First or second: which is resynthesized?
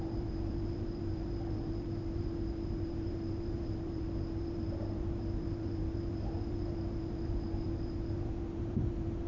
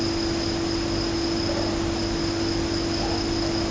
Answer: first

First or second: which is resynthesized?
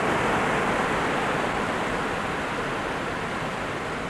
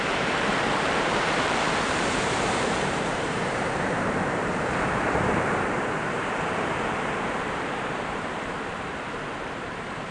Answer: second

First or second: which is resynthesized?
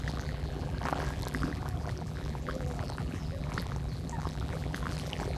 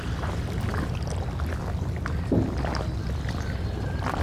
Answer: first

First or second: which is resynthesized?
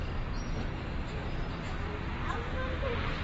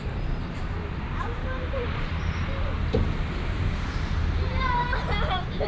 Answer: second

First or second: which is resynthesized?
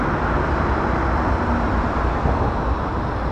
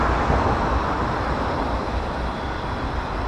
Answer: second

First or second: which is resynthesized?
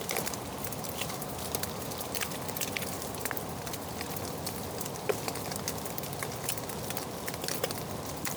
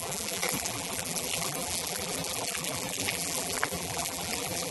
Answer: second